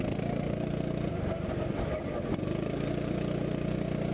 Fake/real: real